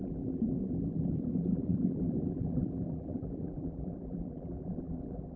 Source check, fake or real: fake